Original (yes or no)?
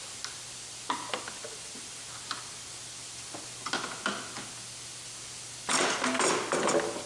yes